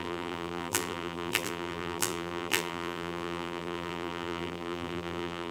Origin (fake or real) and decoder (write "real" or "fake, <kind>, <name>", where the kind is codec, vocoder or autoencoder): fake, vocoder, BigVGAN v2